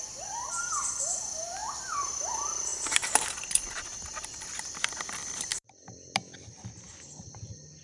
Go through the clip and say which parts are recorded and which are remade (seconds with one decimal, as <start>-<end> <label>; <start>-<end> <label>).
0.0-2.7 remade; 2.7-4.6 recorded; 4.6-7.8 remade